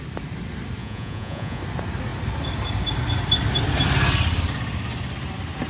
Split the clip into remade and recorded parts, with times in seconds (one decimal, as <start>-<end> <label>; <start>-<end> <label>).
0.0-0.8 recorded; 0.8-1.6 remade; 1.6-5.7 recorded